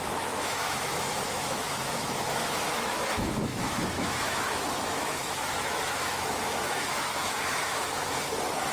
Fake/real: fake